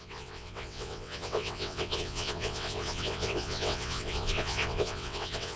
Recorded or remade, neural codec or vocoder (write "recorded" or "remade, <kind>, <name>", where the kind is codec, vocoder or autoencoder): remade, vocoder, WaveNeXt